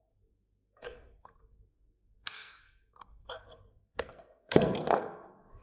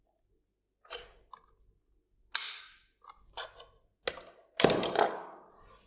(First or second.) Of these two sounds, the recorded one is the second